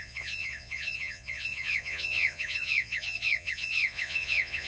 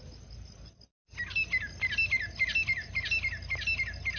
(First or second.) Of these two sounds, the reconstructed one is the first